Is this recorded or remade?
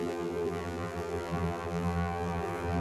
remade